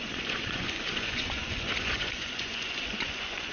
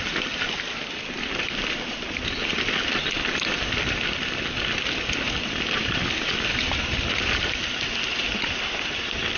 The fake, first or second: first